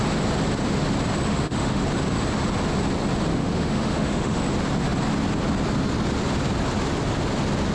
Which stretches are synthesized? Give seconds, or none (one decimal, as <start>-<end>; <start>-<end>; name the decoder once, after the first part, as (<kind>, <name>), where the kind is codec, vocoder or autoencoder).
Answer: 1.3-1.8 (autoencoder, DAC-VAE); 3.3-4.4